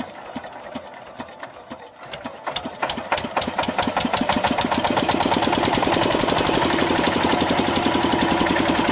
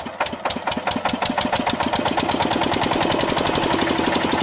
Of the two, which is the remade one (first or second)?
first